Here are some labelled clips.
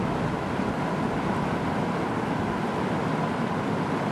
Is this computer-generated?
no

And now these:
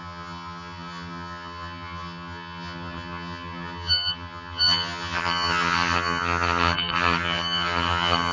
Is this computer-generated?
yes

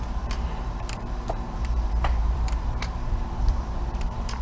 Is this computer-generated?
yes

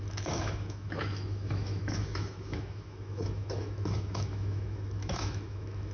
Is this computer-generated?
yes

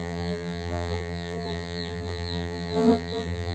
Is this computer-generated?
yes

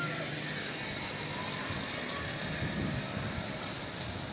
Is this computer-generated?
yes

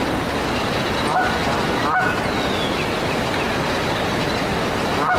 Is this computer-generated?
no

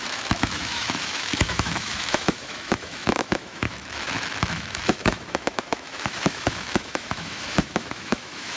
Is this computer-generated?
yes